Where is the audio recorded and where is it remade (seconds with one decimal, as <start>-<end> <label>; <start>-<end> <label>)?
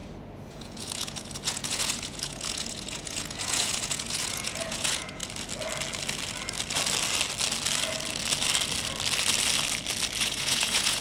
0.0-0.5 recorded; 0.5-5.2 remade; 5.2-10.2 recorded; 10.2-11.0 remade